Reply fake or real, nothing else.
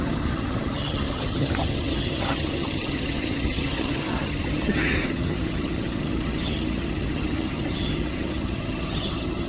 fake